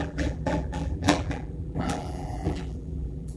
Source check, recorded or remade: remade